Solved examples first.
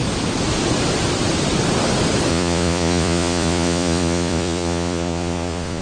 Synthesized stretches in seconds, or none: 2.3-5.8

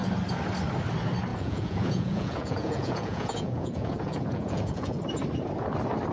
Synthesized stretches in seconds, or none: 1.3-5.0

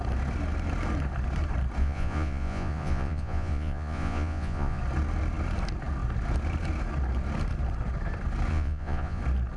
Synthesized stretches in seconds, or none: 1.8-4.8; 8.5-9.2

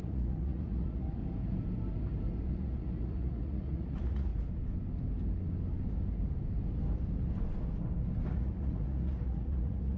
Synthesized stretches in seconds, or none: 0.0-1.2; 2.5-4.3; 8.3-10.0